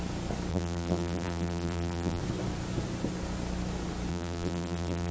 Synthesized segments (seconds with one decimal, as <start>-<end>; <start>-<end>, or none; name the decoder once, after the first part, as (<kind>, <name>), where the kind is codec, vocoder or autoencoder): 0.5-2.2 (vocoder, BigVGAN v2); 4.1-5.1